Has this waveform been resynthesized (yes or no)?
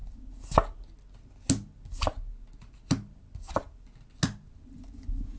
no